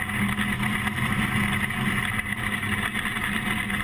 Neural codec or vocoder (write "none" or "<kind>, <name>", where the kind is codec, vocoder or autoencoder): none